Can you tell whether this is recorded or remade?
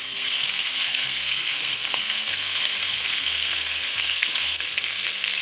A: remade